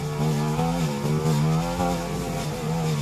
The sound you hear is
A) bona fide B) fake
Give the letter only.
A